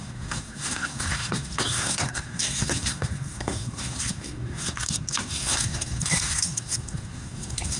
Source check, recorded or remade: remade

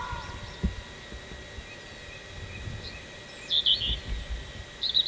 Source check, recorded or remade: recorded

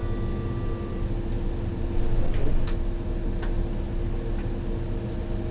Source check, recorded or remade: recorded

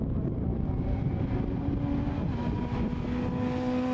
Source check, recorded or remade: recorded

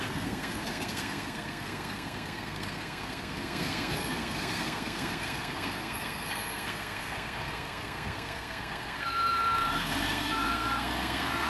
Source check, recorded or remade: remade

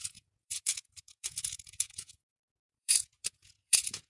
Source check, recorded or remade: remade